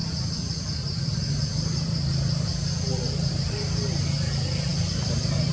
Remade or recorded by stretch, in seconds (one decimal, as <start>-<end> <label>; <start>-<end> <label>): 0.0-5.5 recorded